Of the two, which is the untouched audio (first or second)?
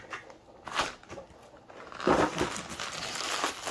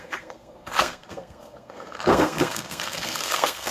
first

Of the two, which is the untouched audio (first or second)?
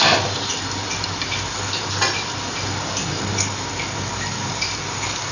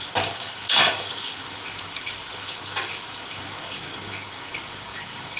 first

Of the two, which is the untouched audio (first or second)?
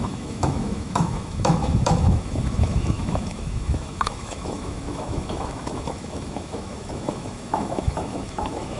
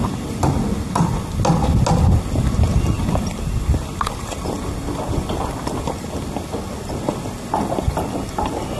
second